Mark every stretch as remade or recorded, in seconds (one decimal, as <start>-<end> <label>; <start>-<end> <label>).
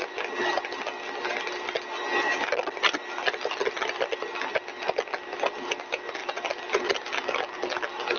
0.0-8.2 recorded